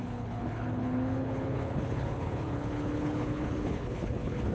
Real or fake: fake